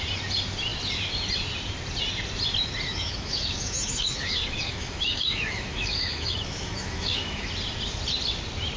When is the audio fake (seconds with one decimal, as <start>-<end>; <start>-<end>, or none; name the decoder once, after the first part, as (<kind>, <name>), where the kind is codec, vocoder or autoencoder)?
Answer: 2.9-7.5 (autoencoder, DAC-VAE)